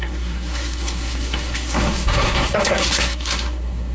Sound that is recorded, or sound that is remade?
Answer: remade